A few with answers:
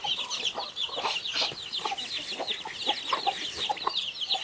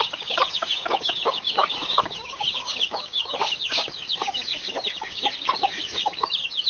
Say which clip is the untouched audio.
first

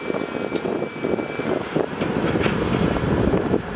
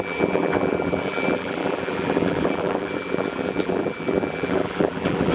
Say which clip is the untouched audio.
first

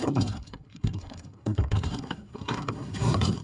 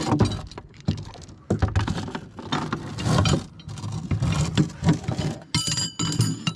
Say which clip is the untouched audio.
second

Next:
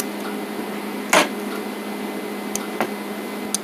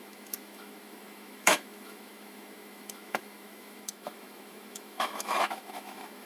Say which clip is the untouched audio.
first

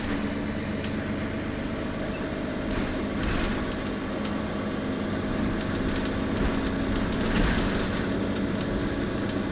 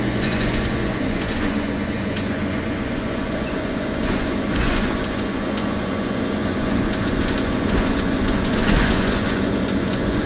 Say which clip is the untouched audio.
first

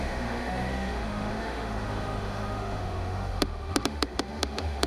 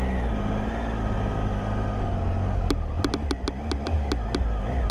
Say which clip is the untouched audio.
second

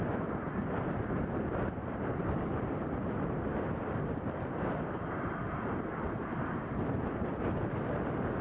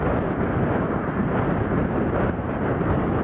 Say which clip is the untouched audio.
second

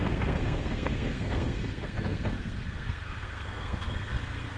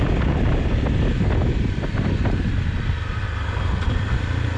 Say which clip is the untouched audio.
second